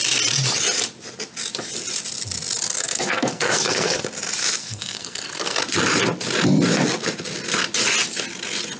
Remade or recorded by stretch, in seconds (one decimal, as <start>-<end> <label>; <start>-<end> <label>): 0.0-2.8 recorded; 2.8-4.0 remade; 4.0-4.6 recorded; 4.6-5.6 remade; 5.6-8.8 recorded